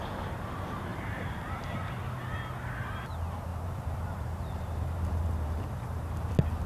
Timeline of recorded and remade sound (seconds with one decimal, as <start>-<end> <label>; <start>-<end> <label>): 0.0-0.9 recorded; 0.9-1.9 remade; 1.9-3.5 recorded; 3.5-6.3 remade; 6.3-6.7 recorded